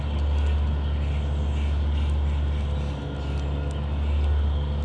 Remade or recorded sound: recorded